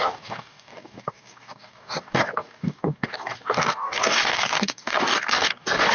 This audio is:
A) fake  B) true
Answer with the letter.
A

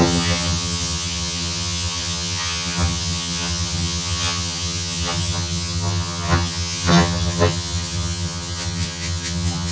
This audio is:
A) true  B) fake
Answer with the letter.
B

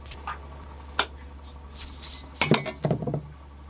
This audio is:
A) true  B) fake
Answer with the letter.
A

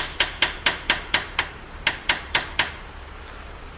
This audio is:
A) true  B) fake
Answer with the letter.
B